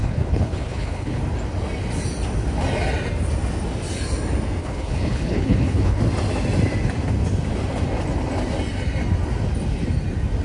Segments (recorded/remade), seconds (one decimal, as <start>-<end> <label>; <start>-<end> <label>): 0.0-1.2 remade; 1.2-4.6 recorded; 4.6-6.0 remade; 6.0-10.4 recorded